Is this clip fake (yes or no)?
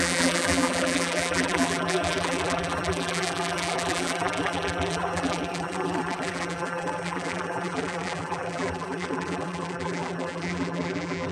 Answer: yes